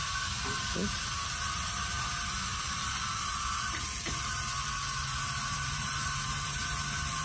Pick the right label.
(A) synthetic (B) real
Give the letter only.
A